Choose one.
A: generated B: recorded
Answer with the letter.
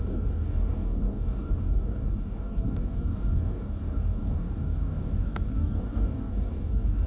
A